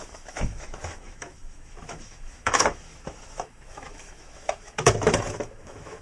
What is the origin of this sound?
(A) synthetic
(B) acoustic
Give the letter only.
A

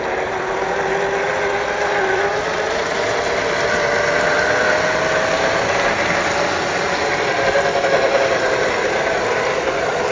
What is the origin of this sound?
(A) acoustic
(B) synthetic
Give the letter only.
A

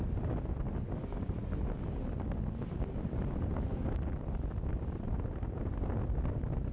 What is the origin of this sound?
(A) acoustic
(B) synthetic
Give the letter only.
A